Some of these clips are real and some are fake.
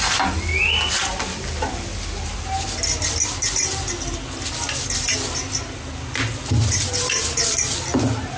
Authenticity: real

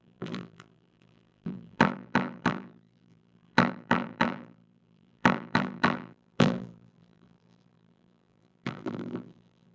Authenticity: fake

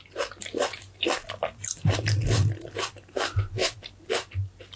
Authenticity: real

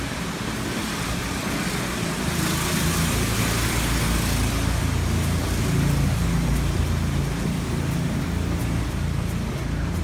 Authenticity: real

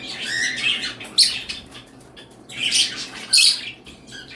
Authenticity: fake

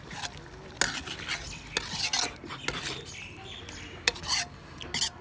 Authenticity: real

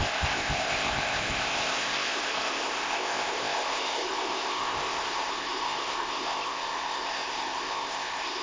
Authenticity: fake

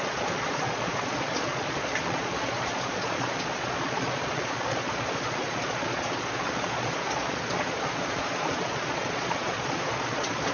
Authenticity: fake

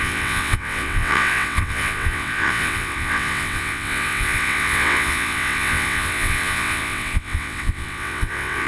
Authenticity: fake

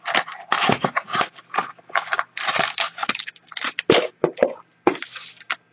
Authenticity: real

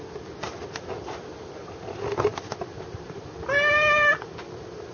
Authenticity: real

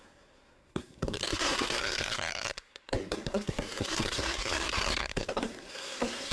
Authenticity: fake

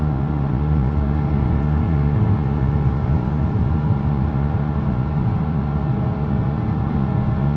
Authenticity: fake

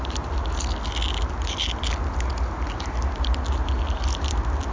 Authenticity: real